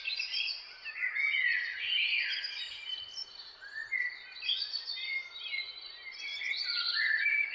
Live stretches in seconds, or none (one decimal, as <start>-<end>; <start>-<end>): 0.0-7.5